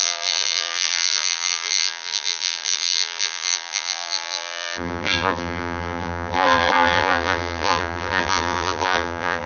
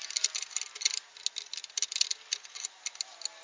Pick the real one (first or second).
second